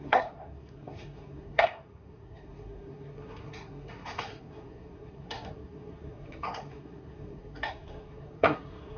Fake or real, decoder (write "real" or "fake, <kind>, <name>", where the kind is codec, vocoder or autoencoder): fake, codec, SNAC